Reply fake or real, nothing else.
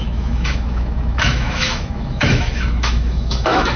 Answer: fake